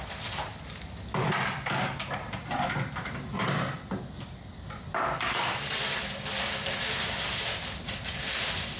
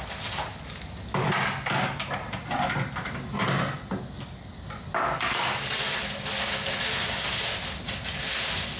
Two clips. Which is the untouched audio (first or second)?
second